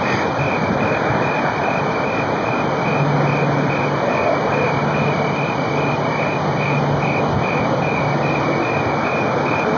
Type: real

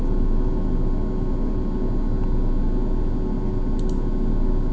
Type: real